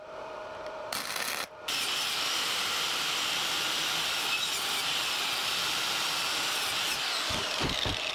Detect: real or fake fake